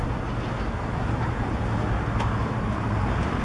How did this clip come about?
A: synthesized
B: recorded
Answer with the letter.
B